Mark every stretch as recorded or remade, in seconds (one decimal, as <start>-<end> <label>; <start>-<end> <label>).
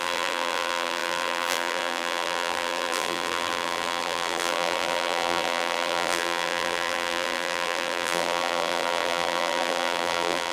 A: 0.0-10.5 remade